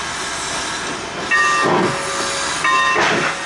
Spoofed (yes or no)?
no